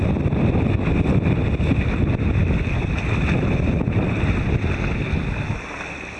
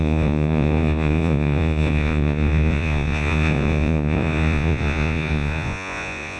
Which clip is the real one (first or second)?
first